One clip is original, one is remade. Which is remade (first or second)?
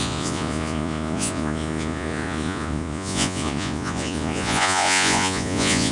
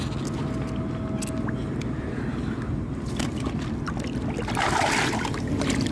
first